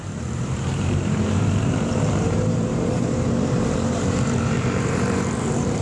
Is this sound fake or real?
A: fake